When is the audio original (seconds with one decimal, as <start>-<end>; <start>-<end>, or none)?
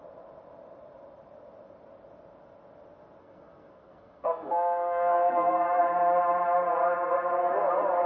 0.0-3.2; 5.8-8.1